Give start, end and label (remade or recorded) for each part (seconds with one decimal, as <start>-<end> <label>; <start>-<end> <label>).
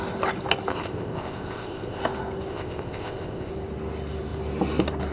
0.0-0.7 recorded; 0.7-2.0 remade; 2.0-2.5 recorded; 2.5-3.5 remade; 3.5-5.1 recorded